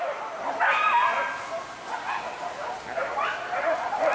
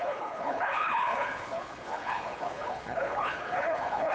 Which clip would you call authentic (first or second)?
first